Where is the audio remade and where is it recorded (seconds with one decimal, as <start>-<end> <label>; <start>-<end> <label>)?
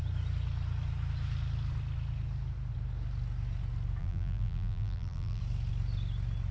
0.0-4.0 recorded; 4.0-5.4 remade; 5.4-6.5 recorded